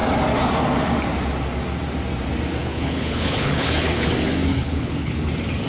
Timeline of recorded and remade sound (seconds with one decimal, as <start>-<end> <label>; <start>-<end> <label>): 0.0-2.6 recorded; 2.6-4.1 remade; 4.1-4.5 recorded; 4.5-5.3 remade; 5.3-5.7 recorded